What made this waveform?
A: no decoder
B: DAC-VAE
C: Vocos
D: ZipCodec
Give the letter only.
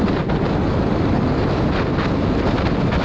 A